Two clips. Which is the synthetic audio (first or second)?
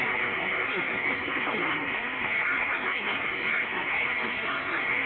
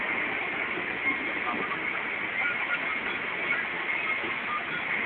first